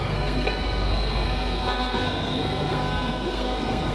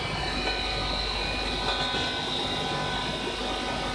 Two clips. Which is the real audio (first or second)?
second